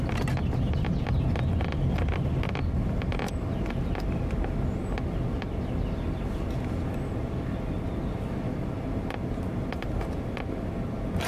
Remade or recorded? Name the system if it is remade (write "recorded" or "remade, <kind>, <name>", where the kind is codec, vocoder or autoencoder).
recorded